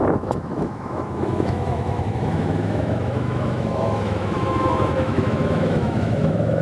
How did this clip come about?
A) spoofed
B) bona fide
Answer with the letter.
A